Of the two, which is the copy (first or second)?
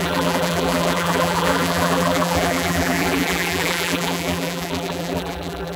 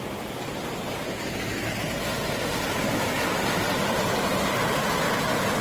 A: first